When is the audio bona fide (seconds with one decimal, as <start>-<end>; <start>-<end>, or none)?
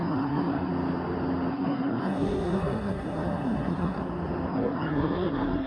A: 0.7-1.5; 4.0-4.5